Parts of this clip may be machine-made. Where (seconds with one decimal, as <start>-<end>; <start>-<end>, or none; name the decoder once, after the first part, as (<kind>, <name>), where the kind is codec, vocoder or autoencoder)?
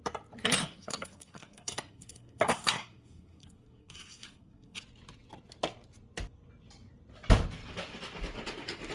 0.6-4.8 (codec, SNAC)